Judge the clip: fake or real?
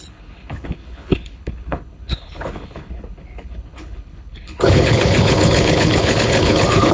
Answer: fake